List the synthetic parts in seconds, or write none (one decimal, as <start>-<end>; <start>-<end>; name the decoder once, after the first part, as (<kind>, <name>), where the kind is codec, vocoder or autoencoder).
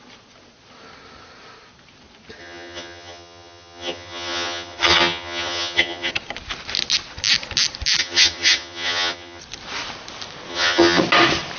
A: 2.4-6.1 (vocoder, HiFi-GAN); 8.0-9.4; 10.5-11.0